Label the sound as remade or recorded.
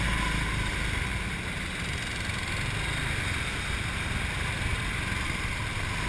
recorded